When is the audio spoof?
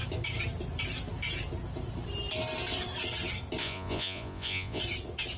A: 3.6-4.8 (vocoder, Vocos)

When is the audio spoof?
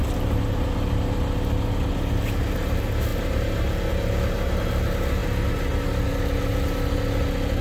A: none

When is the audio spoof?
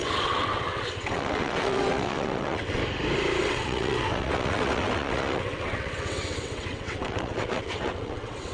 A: 0.0-2.8 (vocoder, WaveNeXt); 3.4-8.5